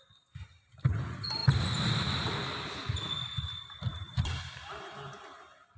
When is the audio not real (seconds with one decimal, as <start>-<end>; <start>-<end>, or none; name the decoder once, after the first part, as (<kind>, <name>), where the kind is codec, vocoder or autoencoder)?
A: 3.9-4.6 (vocoder, BigVGAN v2)